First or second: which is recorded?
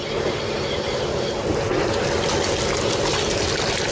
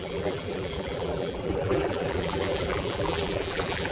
first